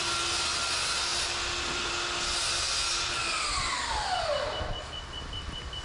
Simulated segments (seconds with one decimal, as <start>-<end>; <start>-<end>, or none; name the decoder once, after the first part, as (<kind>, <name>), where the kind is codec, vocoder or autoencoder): none